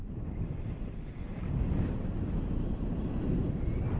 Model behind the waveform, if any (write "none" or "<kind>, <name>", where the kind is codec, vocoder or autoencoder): none